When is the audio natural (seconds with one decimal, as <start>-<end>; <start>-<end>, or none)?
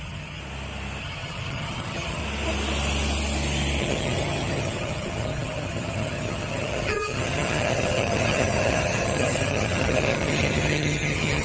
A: 0.4-1.0; 2.2-3.8